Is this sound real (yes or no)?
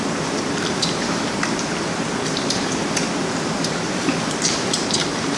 no